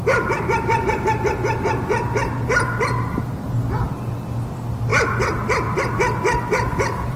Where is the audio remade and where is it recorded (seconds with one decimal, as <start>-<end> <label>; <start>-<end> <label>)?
0.0-7.2 recorded

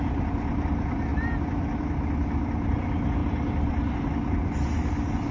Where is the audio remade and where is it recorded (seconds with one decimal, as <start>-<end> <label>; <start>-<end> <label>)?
0.0-5.3 recorded

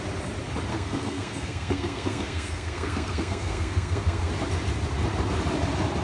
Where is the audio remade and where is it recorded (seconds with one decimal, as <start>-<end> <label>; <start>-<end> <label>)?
0.0-0.7 recorded; 0.7-4.3 remade; 4.3-6.0 recorded